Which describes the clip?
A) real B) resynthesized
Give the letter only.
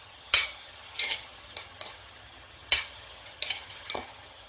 B